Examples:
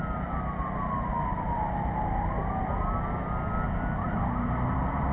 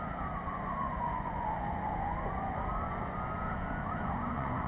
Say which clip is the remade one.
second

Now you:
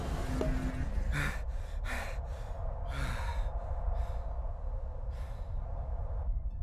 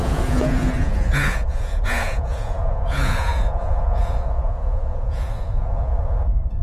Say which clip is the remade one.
second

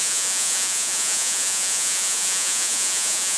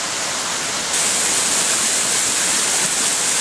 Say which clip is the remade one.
first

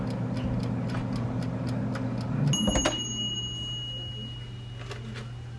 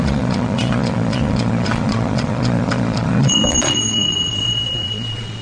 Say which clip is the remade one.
second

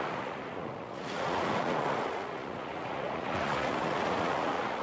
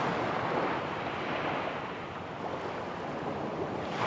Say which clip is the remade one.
first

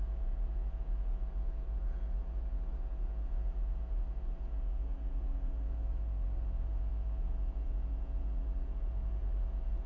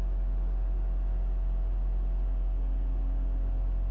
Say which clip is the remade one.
first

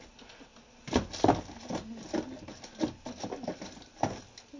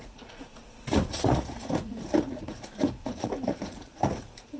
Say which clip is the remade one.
second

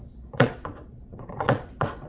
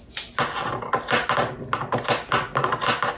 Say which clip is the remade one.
first